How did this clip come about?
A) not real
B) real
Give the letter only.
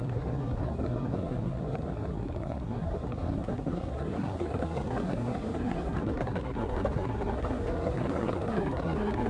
A